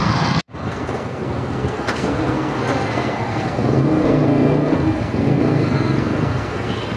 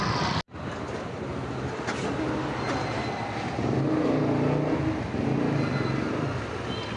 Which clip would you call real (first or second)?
second